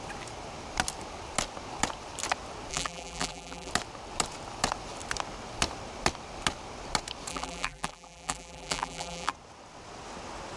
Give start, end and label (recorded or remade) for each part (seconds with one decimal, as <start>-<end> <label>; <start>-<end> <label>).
0.0-2.7 recorded; 2.7-3.7 remade; 3.7-7.3 recorded; 7.3-9.3 remade; 9.3-10.6 recorded